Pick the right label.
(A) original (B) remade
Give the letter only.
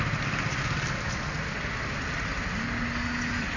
A